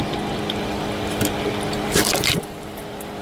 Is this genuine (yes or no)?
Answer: yes